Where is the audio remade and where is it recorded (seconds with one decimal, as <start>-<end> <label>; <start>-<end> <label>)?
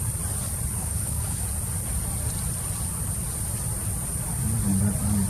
0.0-0.8 recorded; 0.8-1.4 remade; 1.4-5.3 recorded